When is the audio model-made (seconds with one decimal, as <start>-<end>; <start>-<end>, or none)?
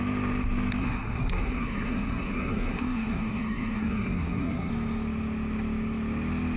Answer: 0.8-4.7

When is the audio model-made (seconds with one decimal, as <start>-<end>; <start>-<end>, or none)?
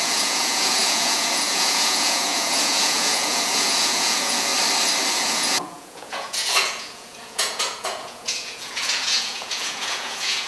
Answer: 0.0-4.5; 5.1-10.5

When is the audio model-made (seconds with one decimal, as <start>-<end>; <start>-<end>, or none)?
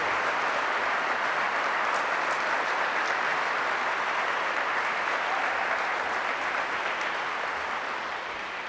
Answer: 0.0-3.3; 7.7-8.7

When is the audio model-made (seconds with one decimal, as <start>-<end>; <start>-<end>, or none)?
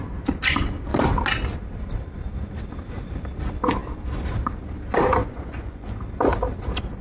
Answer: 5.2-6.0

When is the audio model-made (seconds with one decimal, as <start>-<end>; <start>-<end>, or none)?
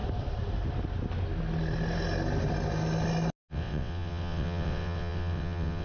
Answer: 3.5-5.8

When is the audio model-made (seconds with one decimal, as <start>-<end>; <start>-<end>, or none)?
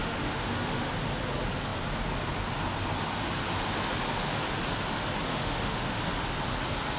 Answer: 0.0-0.9; 5.3-6.0